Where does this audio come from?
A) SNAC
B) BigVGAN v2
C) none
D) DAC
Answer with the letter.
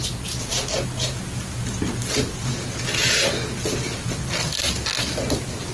C